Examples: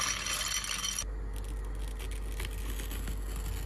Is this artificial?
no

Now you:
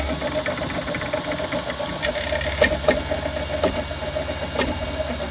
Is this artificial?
no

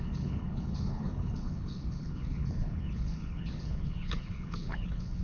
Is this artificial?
yes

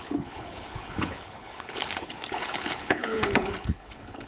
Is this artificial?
yes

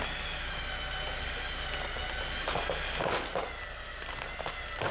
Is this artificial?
no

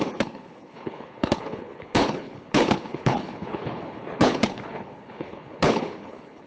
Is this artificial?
yes